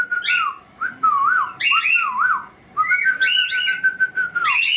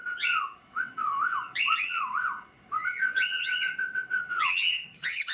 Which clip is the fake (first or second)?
second